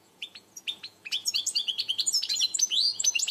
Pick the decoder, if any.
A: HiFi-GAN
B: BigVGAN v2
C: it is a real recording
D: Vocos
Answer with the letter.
D